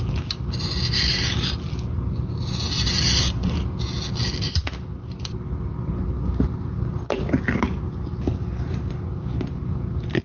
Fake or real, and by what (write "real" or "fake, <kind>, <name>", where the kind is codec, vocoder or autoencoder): real